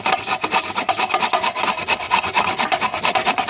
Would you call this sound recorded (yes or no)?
yes